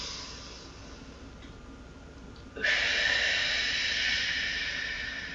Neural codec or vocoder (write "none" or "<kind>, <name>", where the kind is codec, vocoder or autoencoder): none